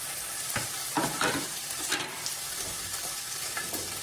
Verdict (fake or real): fake